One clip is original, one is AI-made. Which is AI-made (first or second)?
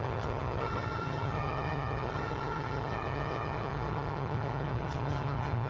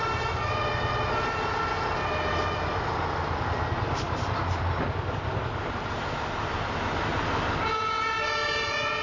first